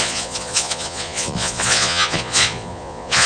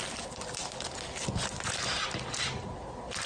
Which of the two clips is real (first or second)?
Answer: second